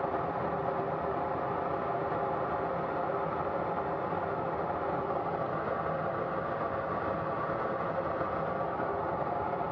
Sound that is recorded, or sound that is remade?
recorded